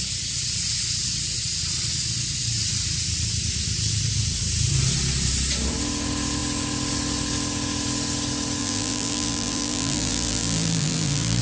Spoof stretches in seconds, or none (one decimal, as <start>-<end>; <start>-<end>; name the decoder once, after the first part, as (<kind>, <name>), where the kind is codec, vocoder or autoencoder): 8.6-11.4 (vocoder, BigVGAN v2)